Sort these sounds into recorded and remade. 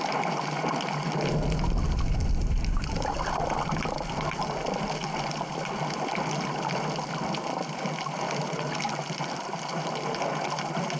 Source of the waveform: recorded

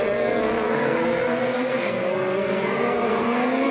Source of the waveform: remade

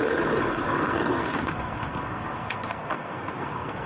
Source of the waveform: remade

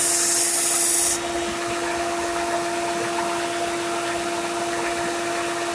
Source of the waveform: recorded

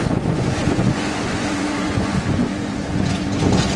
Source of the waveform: remade